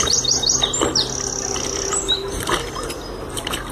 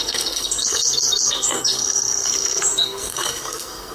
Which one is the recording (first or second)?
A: first